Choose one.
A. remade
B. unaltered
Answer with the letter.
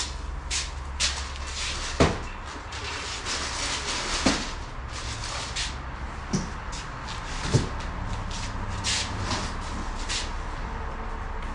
B